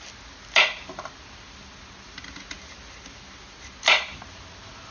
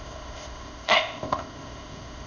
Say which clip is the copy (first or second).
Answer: second